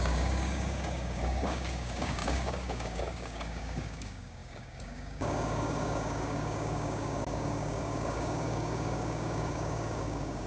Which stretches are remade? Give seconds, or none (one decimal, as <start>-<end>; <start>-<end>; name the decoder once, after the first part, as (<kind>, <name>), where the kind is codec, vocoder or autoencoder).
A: 0.0-10.5 (codec, DAC)